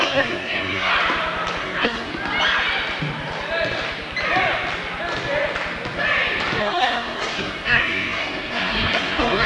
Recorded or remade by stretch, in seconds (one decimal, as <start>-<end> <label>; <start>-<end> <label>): 0.0-0.9 remade; 0.9-1.6 recorded; 1.6-2.1 remade; 2.1-6.6 recorded; 6.6-9.5 remade